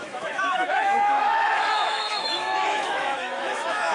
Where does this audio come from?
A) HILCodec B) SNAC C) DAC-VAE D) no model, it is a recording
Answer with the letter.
C